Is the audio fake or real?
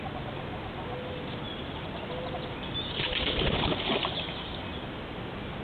real